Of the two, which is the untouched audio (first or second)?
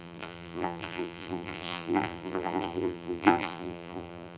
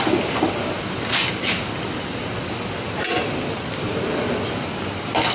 second